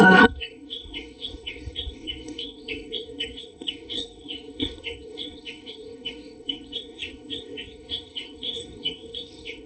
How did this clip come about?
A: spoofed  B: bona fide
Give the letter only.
A